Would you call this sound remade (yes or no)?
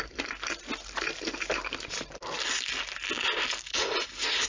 no